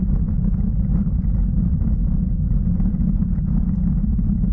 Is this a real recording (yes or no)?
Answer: yes